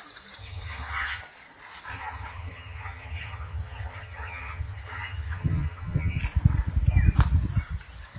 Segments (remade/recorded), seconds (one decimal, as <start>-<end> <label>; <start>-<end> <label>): 0.0-0.4 recorded; 0.4-1.2 remade; 1.2-1.9 recorded; 1.9-6.2 remade; 6.2-8.2 recorded